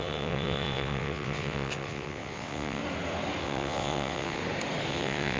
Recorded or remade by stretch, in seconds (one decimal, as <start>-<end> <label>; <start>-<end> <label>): 0.0-2.8 remade; 2.8-3.4 recorded; 3.4-4.4 remade; 4.4-4.9 recorded; 4.9-5.4 remade